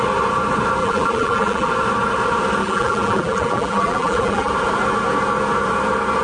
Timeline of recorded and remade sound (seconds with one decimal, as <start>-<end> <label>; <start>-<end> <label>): 0.0-0.8 recorded; 0.8-1.7 remade; 1.7-2.6 recorded; 2.6-4.5 remade; 4.5-6.2 recorded